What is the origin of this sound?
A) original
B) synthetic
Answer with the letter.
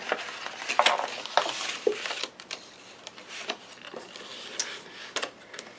A